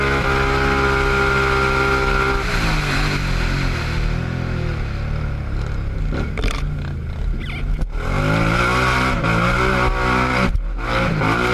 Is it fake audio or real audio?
real